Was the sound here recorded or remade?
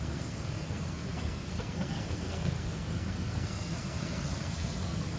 remade